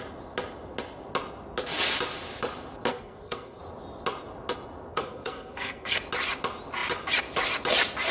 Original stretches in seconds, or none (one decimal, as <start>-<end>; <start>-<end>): 0.0-2.9; 3.6-4.9; 6.0-8.1